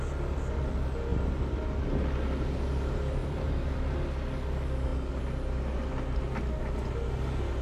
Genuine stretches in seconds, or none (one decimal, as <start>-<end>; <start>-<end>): 0.0-3.2; 3.8-7.6